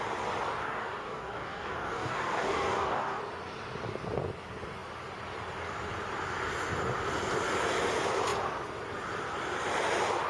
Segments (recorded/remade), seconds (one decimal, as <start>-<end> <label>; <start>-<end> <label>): 0.0-0.6 recorded; 0.6-3.2 remade; 3.2-10.3 recorded